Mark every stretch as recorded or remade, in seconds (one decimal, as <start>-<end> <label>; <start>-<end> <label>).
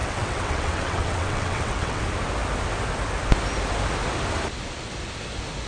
0.0-2.0 remade; 2.0-5.7 recorded